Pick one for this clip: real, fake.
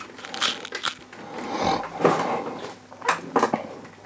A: real